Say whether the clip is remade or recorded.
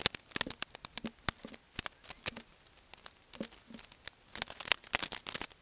recorded